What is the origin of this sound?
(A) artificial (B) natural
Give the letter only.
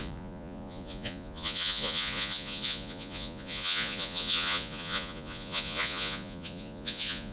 A